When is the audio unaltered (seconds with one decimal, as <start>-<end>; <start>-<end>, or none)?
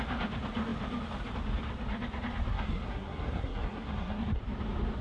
0.0-2.5; 4.4-5.0